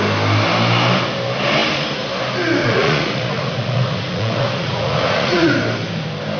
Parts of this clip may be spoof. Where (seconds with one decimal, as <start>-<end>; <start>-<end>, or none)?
2.6-5.5

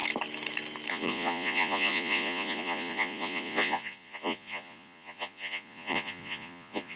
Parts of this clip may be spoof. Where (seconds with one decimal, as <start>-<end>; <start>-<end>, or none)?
0.9-7.0

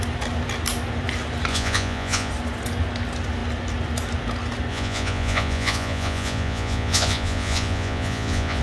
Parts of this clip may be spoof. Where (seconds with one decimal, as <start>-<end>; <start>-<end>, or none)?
1.5-2.3; 4.7-8.6